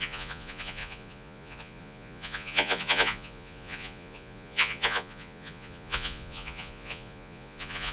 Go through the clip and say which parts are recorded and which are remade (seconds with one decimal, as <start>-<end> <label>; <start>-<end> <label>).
0.0-7.9 remade